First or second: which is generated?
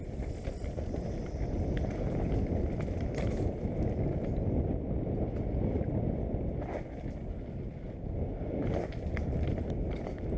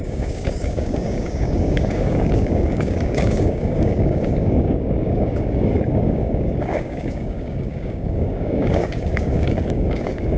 second